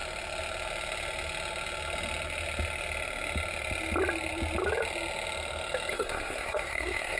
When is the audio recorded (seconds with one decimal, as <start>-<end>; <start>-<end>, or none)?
0.0-5.9